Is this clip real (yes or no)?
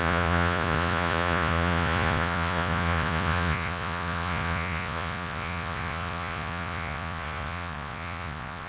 no